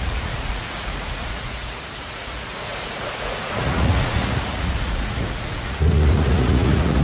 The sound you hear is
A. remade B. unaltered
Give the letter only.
A